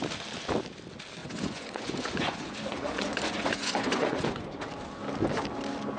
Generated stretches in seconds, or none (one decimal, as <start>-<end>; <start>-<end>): 1.2-4.7